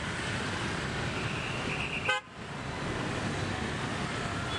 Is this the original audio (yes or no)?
yes